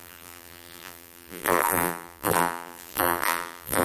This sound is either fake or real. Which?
fake